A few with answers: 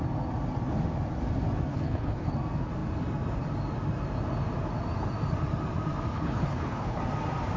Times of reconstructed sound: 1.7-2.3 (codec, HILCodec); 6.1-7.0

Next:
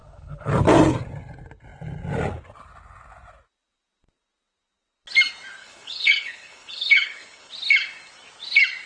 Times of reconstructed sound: 0.0-0.5 (codec, HILCodec); 5.6-7.5